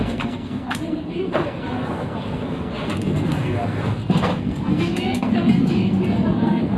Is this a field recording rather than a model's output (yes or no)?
no